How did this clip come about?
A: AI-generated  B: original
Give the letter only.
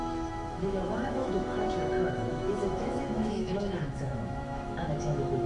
A